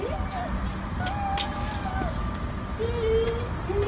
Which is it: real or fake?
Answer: real